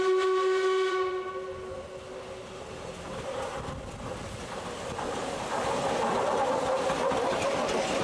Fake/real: real